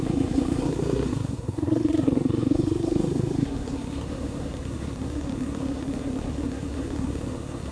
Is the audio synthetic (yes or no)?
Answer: yes